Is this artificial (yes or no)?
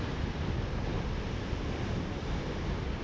no